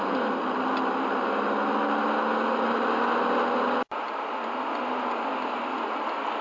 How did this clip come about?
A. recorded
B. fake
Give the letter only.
A